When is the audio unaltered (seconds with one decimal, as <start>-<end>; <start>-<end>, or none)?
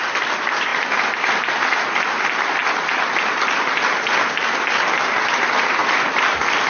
2.6-5.6